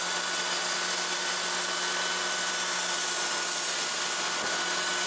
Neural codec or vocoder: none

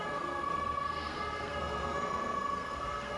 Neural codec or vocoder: codec, SNAC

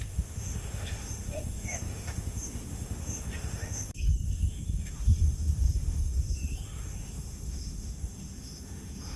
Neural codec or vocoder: autoencoder, DAC-VAE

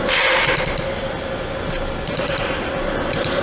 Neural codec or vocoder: none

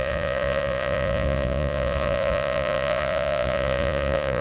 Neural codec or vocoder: vocoder, Vocos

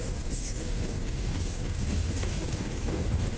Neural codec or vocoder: codec, DAC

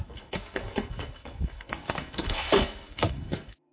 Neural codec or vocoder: codec, SNAC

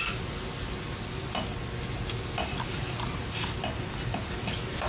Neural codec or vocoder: none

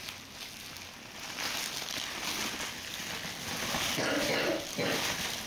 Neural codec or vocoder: none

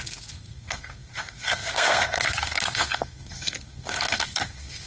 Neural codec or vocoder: codec, SNAC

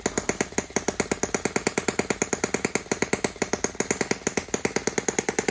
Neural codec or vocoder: none